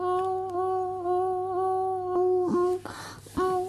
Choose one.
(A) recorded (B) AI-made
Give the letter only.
A